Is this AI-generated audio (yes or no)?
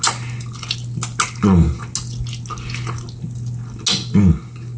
no